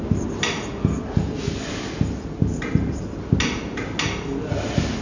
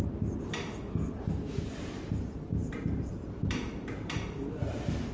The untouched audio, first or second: first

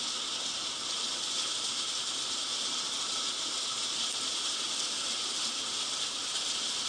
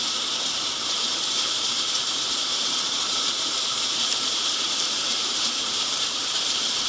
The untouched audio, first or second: first